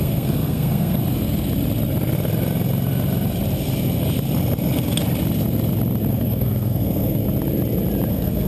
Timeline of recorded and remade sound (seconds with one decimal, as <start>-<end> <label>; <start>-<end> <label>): 0.0-1.0 remade; 1.0-6.1 recorded; 6.1-7.2 remade; 7.2-8.1 recorded; 8.1-8.5 remade